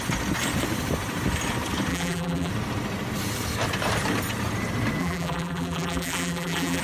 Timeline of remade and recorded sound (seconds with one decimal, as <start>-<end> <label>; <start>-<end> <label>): 0.0-1.9 recorded; 1.9-2.5 remade; 2.5-5.0 recorded; 5.0-6.8 remade